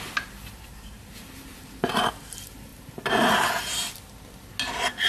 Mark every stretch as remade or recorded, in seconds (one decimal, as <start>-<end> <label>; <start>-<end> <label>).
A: 0.0-0.7 recorded; 0.7-1.7 remade; 1.7-5.1 recorded